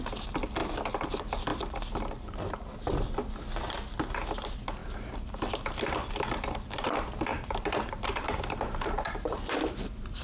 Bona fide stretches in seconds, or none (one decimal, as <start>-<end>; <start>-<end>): 0.0-7.3